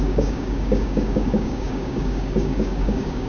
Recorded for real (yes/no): no